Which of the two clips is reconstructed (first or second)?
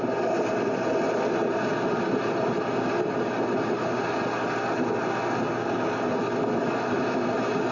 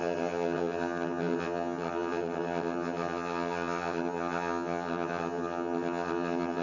second